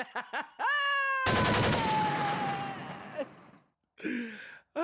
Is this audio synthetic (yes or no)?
no